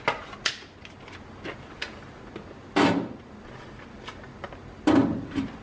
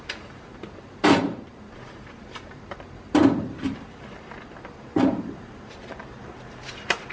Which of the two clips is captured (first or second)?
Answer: first